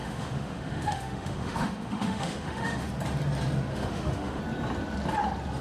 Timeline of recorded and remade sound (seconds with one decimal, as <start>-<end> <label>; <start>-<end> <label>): 0.0-2.9 remade; 2.9-3.7 recorded; 3.7-4.4 remade; 4.4-5.6 recorded